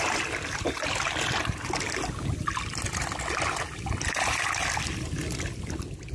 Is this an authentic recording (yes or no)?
yes